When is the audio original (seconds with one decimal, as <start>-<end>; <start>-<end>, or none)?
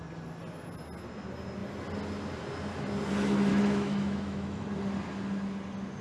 0.0-3.5; 4.7-6.0